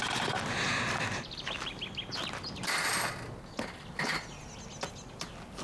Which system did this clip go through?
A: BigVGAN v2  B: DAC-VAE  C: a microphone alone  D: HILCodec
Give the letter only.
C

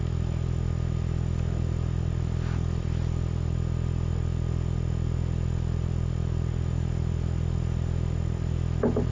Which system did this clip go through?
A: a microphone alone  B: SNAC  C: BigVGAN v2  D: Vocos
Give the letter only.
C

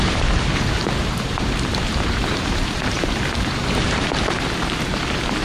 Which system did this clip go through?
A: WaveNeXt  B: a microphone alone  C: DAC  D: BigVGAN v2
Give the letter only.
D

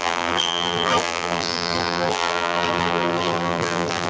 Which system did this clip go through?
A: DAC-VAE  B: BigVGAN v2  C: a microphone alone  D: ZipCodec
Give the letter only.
B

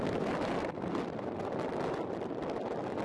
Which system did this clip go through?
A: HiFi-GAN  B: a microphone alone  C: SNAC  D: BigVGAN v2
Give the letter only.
D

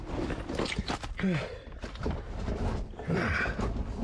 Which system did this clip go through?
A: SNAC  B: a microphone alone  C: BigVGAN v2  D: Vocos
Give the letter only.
B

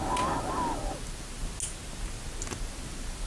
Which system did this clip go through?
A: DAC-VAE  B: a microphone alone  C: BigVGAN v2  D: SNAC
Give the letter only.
B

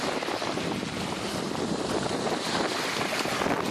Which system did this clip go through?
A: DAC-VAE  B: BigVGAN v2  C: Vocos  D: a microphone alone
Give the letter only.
D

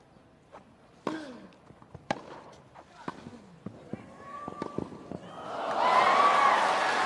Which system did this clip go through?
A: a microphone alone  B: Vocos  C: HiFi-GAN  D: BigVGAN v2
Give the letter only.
A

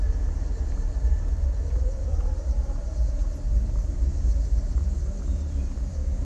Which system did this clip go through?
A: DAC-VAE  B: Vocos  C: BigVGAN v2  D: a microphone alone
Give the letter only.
C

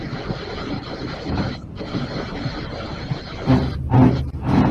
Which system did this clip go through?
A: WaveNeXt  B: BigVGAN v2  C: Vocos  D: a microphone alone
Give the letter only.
D